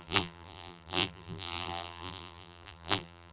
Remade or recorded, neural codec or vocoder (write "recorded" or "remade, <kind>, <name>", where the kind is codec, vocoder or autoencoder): remade, vocoder, BigVGAN v2